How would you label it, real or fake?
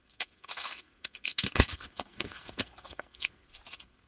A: fake